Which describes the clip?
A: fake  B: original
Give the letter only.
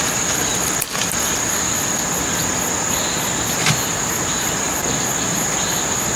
B